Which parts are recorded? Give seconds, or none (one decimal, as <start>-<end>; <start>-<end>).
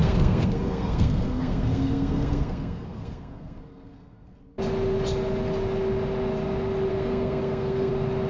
4.4-6.9; 7.9-8.3